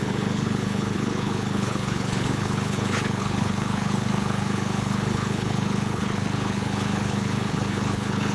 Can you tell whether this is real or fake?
fake